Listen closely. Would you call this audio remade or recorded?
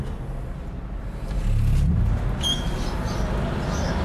recorded